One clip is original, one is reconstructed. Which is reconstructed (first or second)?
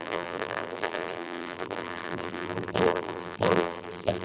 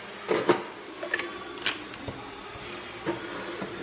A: first